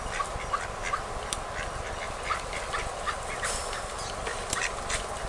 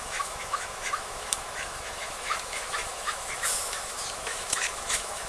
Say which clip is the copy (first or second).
second